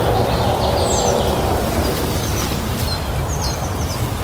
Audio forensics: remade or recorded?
recorded